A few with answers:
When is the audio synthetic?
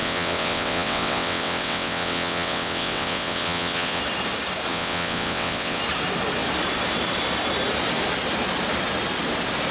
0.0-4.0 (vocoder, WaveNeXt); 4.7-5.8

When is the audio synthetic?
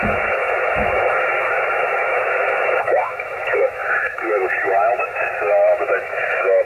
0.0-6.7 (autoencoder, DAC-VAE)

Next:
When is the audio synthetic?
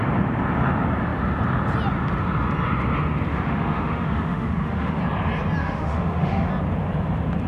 3.3-5.0 (autoencoder, DAC-VAE); 5.6-6.5